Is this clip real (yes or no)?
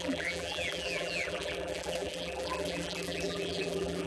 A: no